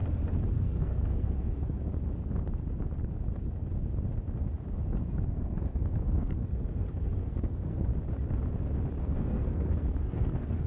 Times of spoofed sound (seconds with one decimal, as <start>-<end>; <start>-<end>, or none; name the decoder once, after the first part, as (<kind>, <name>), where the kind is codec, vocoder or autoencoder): 0.5-1.9 (codec, SNAC); 5.1-7.9; 9.0-10.7